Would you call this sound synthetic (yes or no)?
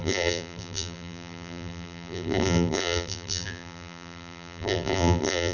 yes